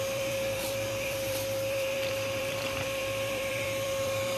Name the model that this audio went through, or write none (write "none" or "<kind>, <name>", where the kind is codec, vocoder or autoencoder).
vocoder, BigVGAN v2